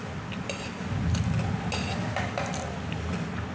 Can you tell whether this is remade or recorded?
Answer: recorded